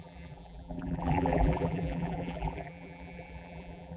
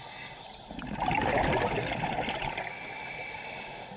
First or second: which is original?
second